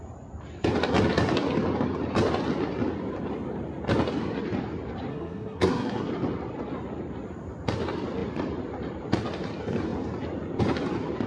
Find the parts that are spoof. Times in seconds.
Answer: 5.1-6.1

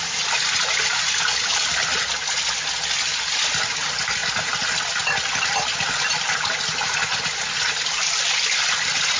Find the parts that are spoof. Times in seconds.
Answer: none

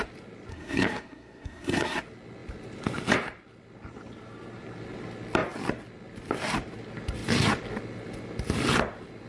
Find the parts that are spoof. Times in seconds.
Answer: 0.5-2.0

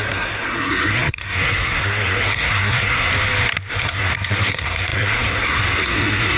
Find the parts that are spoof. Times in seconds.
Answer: 0.0-3.1; 3.7-6.4

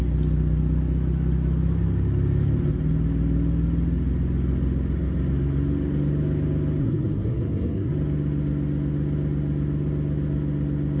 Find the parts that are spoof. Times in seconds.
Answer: 6.8-7.9

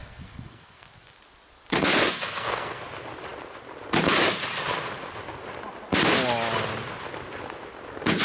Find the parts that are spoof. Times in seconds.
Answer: 0.0-0.9; 2.0-2.8

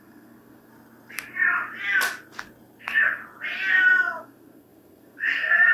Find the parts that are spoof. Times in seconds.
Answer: 0.0-0.7; 2.8-3.2; 4.2-5.7

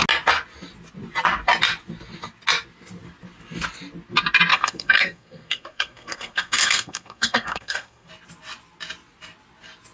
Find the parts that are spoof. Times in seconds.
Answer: 4.5-8.1